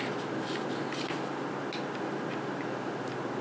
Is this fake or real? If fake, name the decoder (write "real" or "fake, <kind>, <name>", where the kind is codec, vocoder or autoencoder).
real